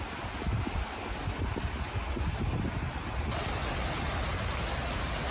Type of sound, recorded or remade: recorded